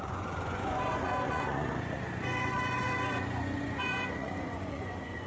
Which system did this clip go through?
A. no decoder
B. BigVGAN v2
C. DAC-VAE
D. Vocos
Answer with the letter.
D